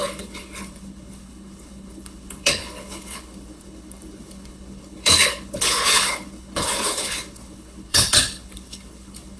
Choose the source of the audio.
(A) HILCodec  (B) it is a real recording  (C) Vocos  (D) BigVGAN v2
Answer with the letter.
A